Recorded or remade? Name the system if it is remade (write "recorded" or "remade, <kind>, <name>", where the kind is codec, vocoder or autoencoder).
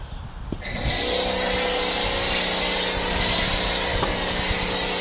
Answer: recorded